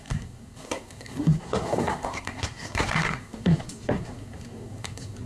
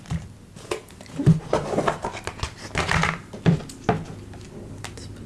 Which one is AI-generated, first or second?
first